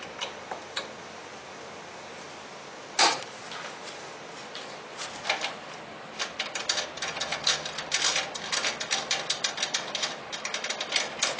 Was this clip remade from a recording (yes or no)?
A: no